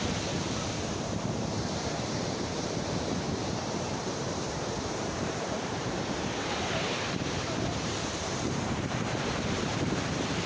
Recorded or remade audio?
remade